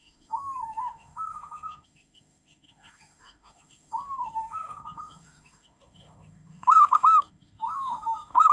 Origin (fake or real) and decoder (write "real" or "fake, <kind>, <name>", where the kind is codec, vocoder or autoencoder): fake, autoencoder, DAC-VAE